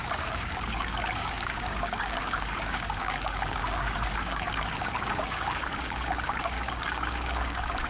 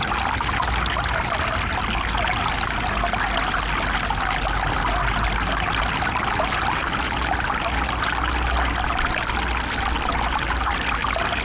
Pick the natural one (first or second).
second